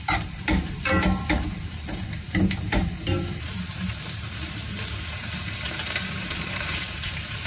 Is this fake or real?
fake